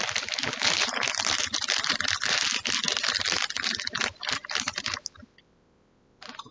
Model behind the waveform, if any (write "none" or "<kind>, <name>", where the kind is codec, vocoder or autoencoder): none